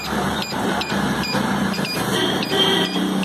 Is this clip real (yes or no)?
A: no